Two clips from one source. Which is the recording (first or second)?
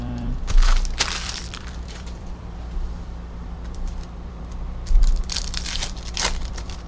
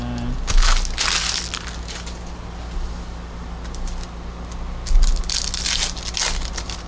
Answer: second